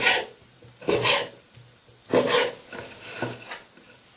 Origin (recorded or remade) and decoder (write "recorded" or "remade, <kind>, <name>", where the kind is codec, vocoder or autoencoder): recorded